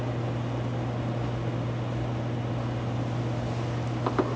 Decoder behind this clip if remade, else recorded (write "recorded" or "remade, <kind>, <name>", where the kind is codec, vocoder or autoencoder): recorded